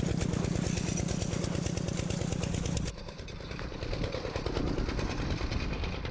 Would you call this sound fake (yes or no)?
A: no